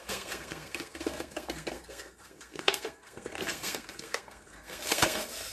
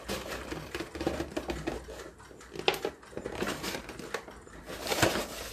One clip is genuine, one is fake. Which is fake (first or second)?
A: first